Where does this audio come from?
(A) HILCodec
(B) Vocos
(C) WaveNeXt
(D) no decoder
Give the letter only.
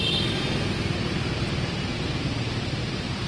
D